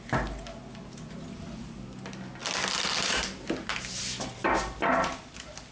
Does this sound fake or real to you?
real